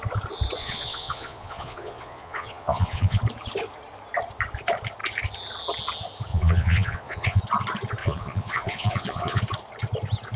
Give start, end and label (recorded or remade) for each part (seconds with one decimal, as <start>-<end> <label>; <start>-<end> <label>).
0.0-0.6 recorded; 0.6-3.2 remade; 3.2-6.3 recorded; 6.3-7.4 remade; 7.4-8.0 recorded; 8.0-9.4 remade; 9.4-10.4 recorded